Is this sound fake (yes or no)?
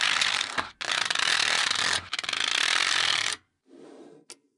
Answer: no